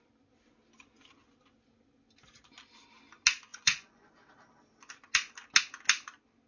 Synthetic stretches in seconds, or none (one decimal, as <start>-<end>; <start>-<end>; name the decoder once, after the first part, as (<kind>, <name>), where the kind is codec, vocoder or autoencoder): 3.5-4.1 (vocoder, Vocos)